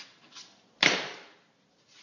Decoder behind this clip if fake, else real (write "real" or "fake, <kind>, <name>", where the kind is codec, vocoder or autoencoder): real